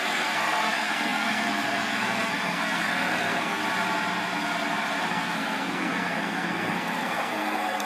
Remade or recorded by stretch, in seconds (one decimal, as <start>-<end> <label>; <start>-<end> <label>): 0.0-3.6 remade; 3.6-5.0 recorded; 5.0-7.9 remade